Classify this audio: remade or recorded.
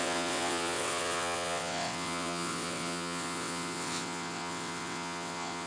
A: remade